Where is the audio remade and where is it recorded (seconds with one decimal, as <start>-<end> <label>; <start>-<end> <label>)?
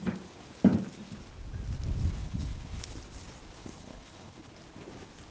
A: 0.0-2.2 recorded; 2.2-2.8 remade; 2.8-3.6 recorded; 3.6-4.5 remade; 4.5-5.3 recorded